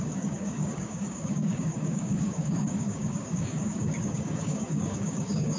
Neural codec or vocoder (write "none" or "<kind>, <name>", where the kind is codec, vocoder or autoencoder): codec, DAC